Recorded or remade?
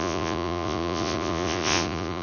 remade